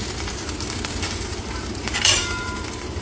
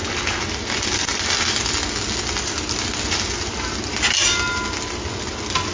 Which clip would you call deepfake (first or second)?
first